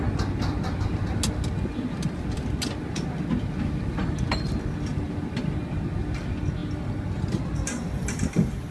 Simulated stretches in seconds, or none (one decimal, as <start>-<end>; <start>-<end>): none